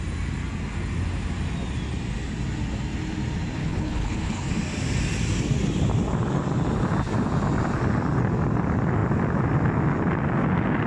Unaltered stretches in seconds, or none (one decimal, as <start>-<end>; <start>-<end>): 0.0-3.6; 4.5-10.9